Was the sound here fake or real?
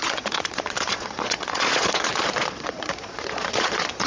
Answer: fake